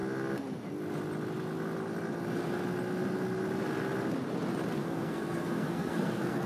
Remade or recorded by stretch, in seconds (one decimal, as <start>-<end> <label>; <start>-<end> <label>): 0.0-4.8 recorded; 4.8-6.5 remade